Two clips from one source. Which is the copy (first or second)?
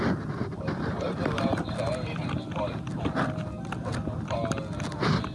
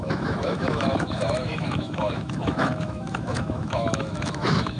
second